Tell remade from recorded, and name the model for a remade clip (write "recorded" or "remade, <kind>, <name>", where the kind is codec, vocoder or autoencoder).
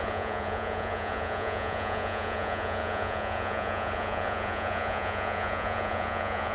remade, vocoder, Vocos